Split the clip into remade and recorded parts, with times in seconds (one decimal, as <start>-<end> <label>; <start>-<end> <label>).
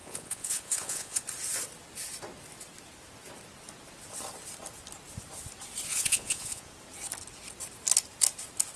0.0-1.2 remade; 1.2-5.9 recorded; 5.9-6.7 remade; 6.7-8.8 recorded